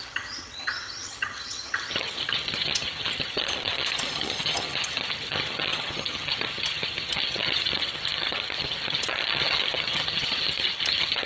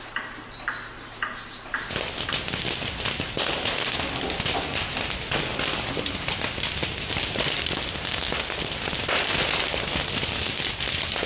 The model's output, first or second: first